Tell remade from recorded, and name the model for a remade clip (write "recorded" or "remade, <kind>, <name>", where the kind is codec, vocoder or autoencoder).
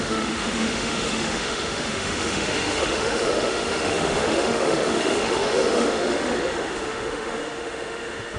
remade, autoencoder, DAC-VAE